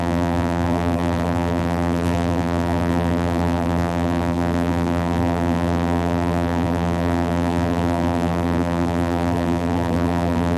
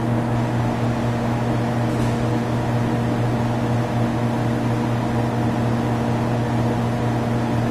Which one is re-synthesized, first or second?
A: first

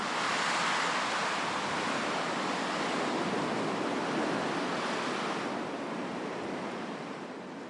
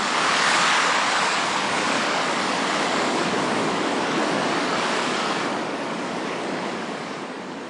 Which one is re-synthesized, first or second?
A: second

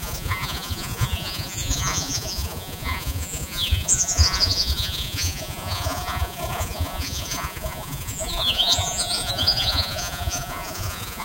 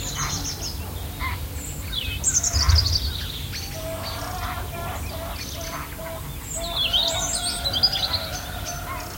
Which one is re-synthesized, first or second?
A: first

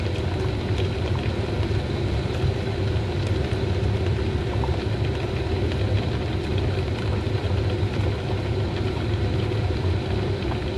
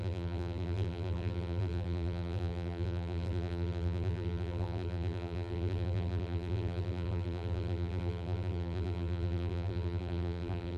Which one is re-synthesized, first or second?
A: second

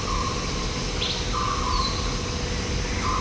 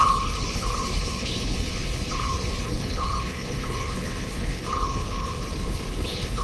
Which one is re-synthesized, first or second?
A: second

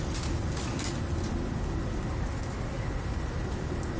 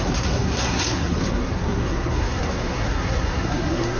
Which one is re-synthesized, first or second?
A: second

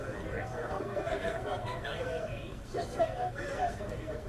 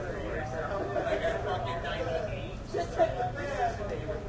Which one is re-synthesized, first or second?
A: first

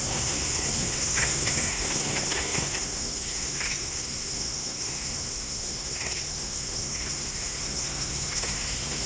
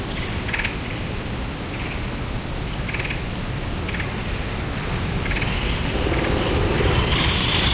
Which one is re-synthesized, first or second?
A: first